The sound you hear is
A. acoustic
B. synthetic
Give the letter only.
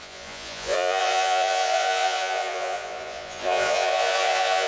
B